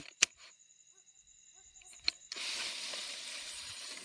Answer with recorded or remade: recorded